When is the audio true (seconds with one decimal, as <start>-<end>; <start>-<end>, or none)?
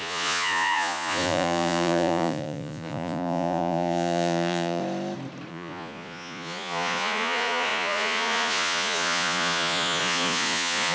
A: 4.8-5.5